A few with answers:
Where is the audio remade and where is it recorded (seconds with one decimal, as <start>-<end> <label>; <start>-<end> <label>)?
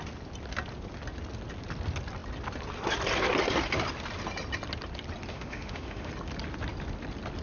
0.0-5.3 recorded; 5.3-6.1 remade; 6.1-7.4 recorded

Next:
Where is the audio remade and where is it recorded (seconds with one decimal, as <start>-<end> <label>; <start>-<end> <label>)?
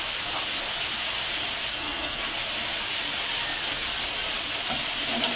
0.0-1.7 recorded; 1.7-2.2 remade; 2.2-5.4 recorded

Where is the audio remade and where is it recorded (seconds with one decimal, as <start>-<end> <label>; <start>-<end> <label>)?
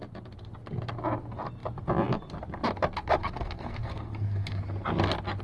0.0-3.2 recorded; 3.2-4.6 remade; 4.6-5.4 recorded